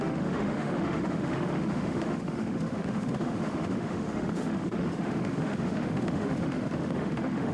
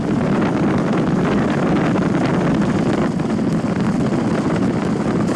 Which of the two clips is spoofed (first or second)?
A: first